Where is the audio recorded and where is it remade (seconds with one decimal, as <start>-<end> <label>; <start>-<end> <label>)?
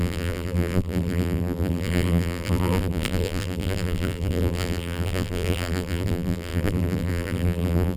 0.0-8.0 remade